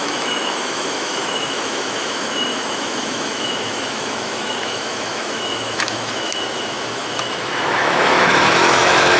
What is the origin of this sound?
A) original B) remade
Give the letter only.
B